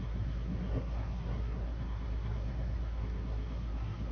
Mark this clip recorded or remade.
remade